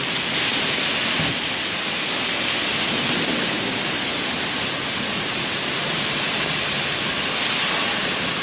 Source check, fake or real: real